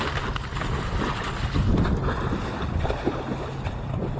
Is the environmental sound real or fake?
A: real